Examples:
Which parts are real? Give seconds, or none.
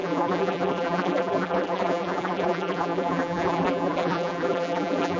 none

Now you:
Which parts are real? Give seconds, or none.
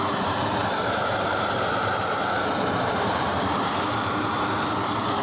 0.0-0.6; 3.7-5.2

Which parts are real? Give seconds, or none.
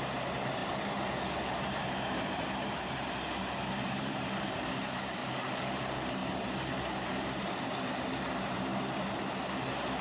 5.2-5.8; 8.7-10.0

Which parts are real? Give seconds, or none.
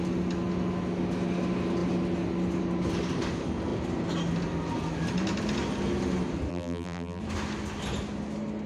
0.0-6.5; 7.2-8.7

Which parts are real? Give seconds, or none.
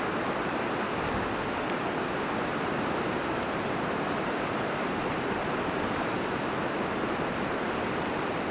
0.0-2.5; 7.6-8.5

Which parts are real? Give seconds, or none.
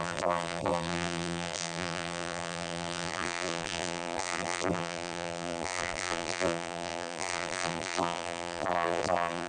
none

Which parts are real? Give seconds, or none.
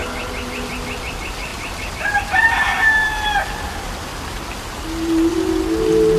1.0-1.5; 4.6-6.2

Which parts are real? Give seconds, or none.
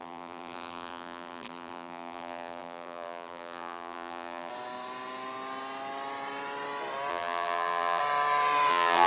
4.5-7.1; 8.0-8.7